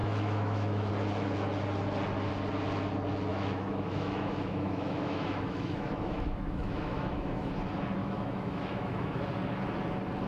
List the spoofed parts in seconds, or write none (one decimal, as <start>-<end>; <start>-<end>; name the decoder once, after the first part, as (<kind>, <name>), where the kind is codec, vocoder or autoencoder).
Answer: 0.0-0.9 (autoencoder, DAC-VAE); 3.3-7.5; 8.0-9.2